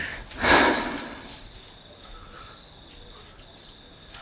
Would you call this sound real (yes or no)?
yes